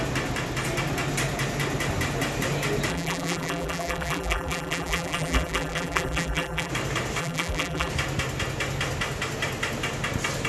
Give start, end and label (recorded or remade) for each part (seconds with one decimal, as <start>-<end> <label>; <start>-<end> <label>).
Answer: 0.0-2.9 recorded; 2.9-6.7 remade; 6.7-7.2 recorded; 7.2-7.9 remade; 7.9-10.5 recorded

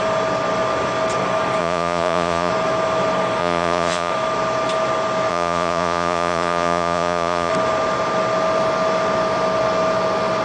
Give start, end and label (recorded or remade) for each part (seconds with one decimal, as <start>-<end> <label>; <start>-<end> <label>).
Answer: 0.0-1.6 recorded; 1.6-2.5 remade; 2.5-3.4 recorded; 3.4-4.1 remade; 4.1-5.3 recorded; 5.3-7.5 remade; 7.5-10.4 recorded

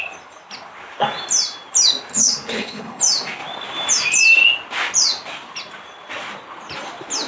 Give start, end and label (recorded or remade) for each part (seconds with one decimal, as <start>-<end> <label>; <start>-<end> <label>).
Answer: 0.0-2.1 recorded; 2.1-3.0 remade; 3.0-7.3 recorded

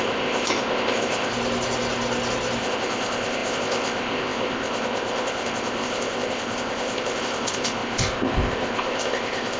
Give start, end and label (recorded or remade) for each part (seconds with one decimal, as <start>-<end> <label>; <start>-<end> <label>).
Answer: 0.0-1.3 remade; 1.3-2.6 recorded; 2.6-9.6 remade

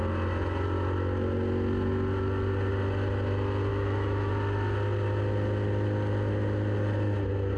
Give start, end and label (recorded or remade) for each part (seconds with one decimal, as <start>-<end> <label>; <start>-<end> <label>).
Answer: 0.0-3.7 recorded; 3.7-4.3 remade; 4.3-7.6 recorded

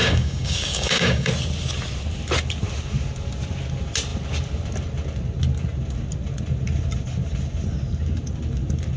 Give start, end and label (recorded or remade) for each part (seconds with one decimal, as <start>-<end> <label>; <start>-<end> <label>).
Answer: 0.0-1.3 remade; 1.3-9.0 recorded

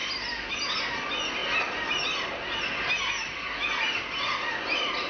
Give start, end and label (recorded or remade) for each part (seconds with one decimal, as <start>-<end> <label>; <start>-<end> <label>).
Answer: 0.0-5.1 recorded